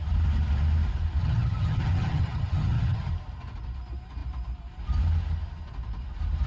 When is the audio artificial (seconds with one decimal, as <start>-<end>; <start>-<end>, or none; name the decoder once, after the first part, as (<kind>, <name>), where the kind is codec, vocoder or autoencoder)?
1.2-3.1 (vocoder, HiFi-GAN)